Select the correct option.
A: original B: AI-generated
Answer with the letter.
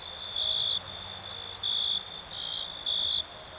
A